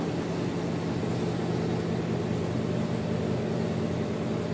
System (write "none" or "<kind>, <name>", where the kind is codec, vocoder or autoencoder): none